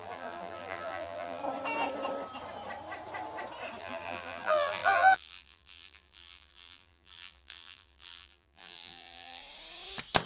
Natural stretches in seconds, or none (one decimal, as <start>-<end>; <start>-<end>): 1.4-3.8; 9.4-10.3